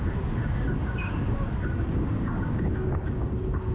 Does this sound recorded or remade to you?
remade